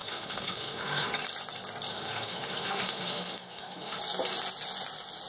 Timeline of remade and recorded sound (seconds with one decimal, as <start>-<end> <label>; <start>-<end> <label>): 0.0-1.1 remade; 1.1-1.9 recorded; 1.9-4.0 remade; 4.0-5.3 recorded